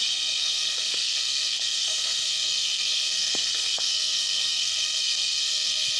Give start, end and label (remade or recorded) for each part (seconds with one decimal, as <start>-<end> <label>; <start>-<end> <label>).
0.0-6.0 remade